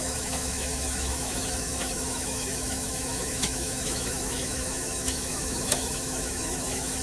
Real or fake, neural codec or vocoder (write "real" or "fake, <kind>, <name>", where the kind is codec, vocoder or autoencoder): fake, autoencoder, DAC-VAE